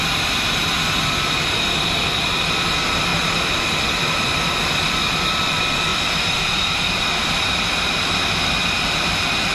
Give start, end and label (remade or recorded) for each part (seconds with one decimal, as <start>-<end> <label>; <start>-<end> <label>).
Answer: 0.0-9.5 recorded